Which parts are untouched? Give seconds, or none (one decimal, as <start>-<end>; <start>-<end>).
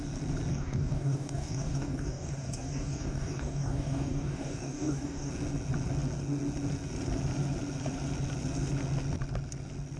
0.0-0.5; 5.3-10.0